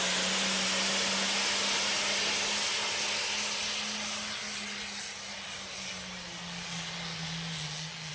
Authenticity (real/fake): real